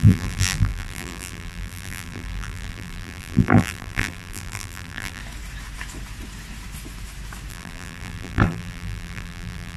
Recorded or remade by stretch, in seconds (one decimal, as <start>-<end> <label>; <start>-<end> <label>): 0.0-5.2 remade; 5.2-7.5 recorded; 7.5-9.8 remade